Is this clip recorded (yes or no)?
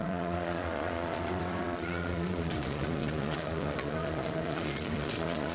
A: no